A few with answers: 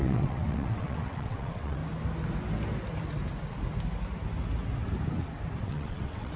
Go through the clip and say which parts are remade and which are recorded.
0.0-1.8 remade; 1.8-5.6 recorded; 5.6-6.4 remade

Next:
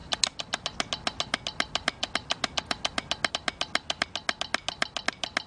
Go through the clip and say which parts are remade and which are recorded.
0.0-5.5 recorded

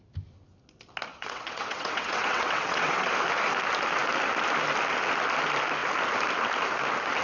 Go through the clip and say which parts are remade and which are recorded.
0.0-1.1 recorded; 1.1-3.1 remade; 3.1-7.2 recorded

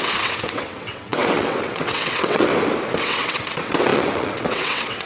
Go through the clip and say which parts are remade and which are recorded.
0.0-2.5 remade; 2.5-3.0 recorded; 3.0-5.1 remade

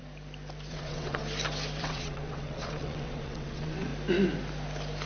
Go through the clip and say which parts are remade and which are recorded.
0.0-0.7 recorded; 0.7-1.2 remade; 1.2-1.8 recorded; 1.8-3.9 remade; 3.9-5.1 recorded

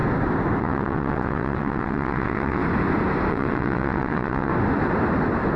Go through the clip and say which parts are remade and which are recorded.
0.0-0.6 recorded; 0.6-2.6 remade; 2.6-3.3 recorded; 3.3-4.5 remade; 4.5-5.6 recorded